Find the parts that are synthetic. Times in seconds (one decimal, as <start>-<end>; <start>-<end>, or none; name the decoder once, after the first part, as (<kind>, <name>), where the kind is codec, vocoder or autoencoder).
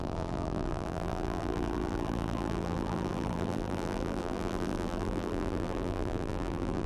0.0-6.9 (vocoder, BigVGAN v2)